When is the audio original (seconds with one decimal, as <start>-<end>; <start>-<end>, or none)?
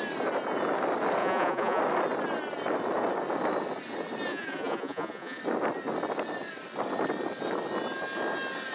0.0-1.2; 1.8-4.3; 5.4-8.7